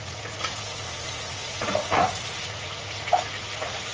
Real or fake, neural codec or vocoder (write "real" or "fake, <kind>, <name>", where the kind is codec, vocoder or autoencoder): fake, vocoder, Vocos